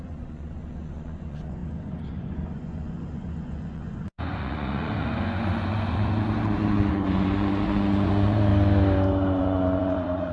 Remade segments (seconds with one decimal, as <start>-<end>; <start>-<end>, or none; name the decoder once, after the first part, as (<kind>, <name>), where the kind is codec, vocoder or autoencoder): 0.0-8.5 (vocoder, Vocos); 9.4-10.3